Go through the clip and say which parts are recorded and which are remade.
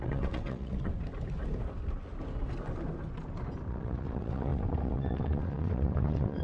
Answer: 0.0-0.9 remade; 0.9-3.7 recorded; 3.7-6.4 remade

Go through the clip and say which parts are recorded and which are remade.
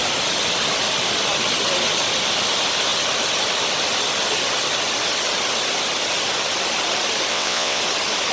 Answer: 0.0-7.3 recorded; 7.3-7.8 remade; 7.8-8.3 recorded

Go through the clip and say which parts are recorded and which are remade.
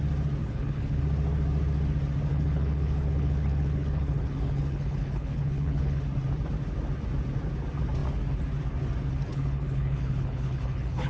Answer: 0.0-0.4 recorded; 0.4-1.0 remade; 1.0-2.3 recorded; 2.3-6.0 remade; 6.0-9.3 recorded; 9.3-11.1 remade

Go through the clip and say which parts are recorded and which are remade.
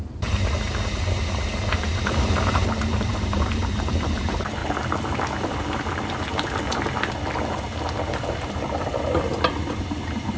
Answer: 0.0-4.6 remade; 4.6-9.8 recorded; 9.8-10.4 remade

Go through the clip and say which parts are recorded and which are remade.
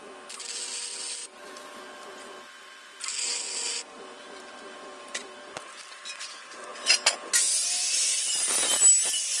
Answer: 0.0-1.2 recorded; 1.2-1.8 remade; 1.8-9.4 recorded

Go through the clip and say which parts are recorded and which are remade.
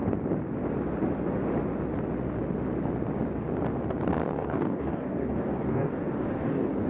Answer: 0.0-4.2 recorded; 4.2-6.9 remade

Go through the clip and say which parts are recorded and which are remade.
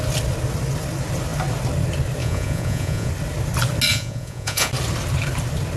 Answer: 0.0-2.2 recorded; 2.2-3.1 remade; 3.1-3.9 recorded; 3.9-4.7 remade; 4.7-5.8 recorded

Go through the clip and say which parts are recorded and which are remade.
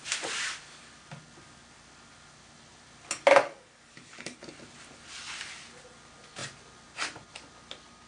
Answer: 0.0-3.4 recorded; 3.4-4.4 remade; 4.4-8.1 recorded